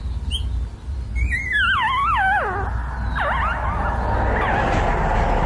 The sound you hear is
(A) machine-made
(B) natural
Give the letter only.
B